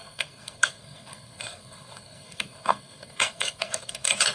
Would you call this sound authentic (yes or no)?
no